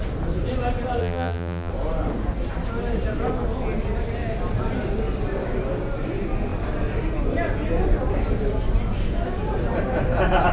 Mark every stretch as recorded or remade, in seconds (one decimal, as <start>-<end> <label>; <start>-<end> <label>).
0.0-1.0 recorded; 1.0-1.7 remade; 1.7-10.5 recorded